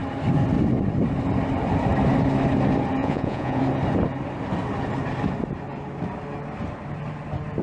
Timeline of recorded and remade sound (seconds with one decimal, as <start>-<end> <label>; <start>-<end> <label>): 0.0-3.0 recorded; 3.0-3.6 remade; 3.6-7.6 recorded